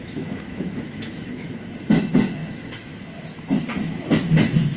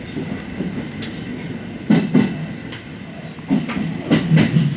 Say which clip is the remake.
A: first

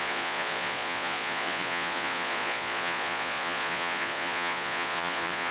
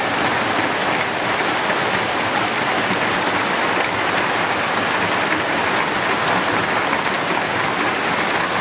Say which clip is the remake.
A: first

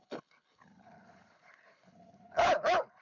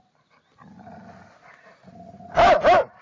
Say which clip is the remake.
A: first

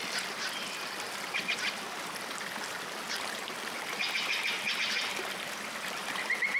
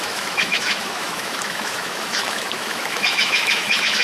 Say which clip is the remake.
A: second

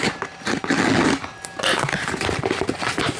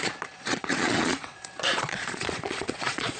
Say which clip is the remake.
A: second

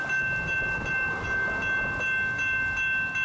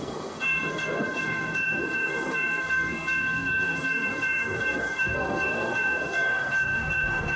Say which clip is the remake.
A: second